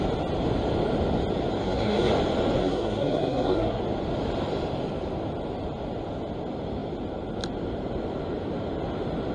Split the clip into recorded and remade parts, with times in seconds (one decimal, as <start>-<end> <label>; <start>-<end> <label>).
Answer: 0.0-1.6 recorded; 1.6-2.1 remade; 2.1-2.6 recorded; 2.6-3.8 remade; 3.8-9.3 recorded